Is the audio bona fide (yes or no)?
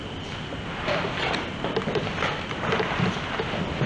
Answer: yes